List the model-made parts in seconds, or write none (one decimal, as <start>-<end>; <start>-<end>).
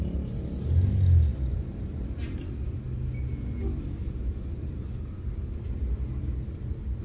none